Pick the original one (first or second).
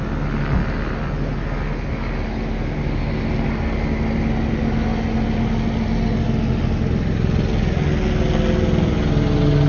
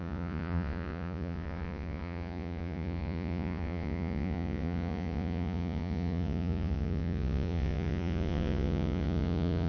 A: first